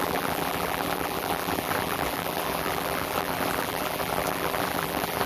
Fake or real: fake